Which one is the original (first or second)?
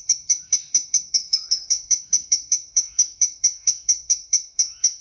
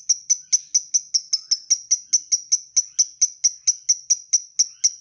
second